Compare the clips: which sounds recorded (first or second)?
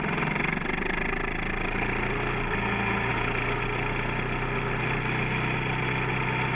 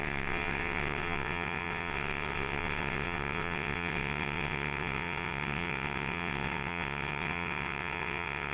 first